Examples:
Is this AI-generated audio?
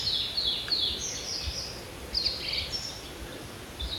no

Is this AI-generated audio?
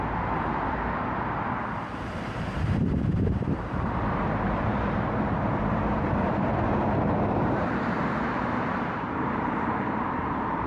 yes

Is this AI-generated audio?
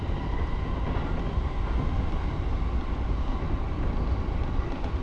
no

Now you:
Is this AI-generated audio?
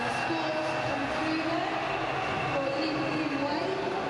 no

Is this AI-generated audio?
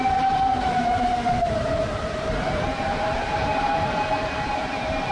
yes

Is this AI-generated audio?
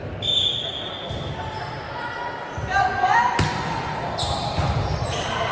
no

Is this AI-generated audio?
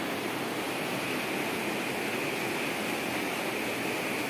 no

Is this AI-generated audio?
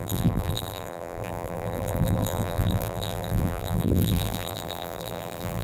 yes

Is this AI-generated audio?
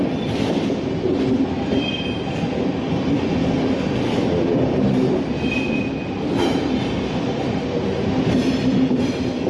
yes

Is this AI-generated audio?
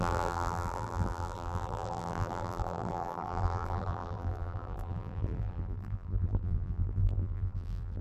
yes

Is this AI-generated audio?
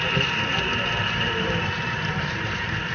yes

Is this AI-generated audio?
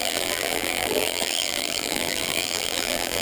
yes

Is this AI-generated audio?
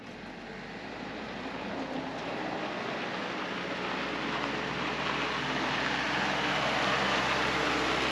no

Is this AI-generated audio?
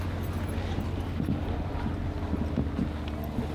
no